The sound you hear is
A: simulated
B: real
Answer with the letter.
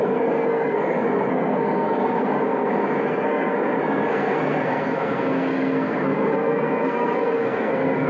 A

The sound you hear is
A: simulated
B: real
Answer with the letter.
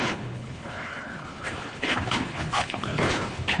A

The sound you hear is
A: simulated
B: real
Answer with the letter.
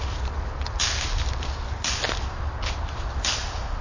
B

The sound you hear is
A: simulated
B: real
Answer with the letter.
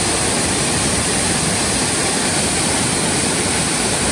A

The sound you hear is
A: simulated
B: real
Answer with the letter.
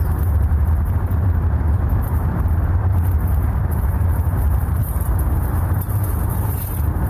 A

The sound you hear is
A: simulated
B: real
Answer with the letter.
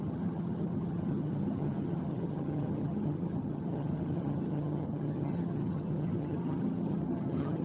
A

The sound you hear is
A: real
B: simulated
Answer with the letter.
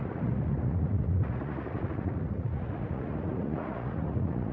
B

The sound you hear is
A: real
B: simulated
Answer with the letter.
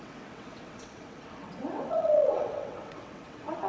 B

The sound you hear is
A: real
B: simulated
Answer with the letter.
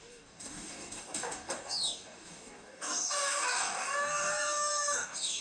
B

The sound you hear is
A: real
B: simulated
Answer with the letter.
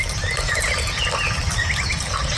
B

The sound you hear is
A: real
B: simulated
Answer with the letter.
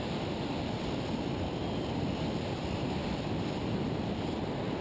A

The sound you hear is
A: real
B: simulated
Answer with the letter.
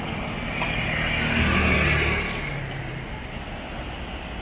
A